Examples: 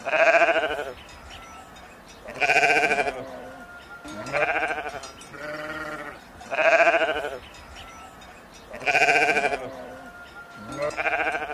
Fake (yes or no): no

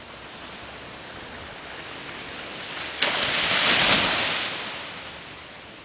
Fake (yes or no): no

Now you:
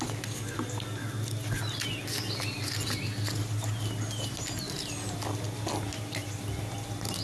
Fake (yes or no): no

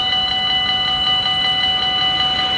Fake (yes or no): no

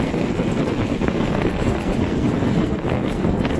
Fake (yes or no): yes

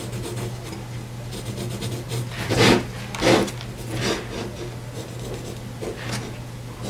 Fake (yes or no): no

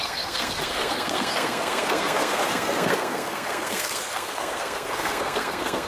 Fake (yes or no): yes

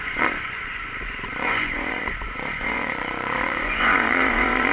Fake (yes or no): yes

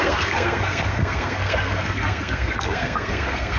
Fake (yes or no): yes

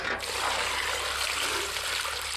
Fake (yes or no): no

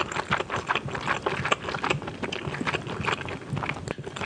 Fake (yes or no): no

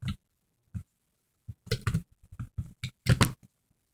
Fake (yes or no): no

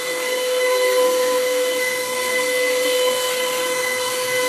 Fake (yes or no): yes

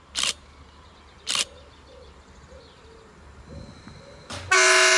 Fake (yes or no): no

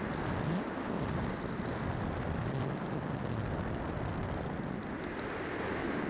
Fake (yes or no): no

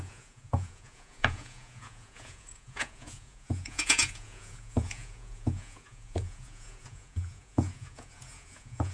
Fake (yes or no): yes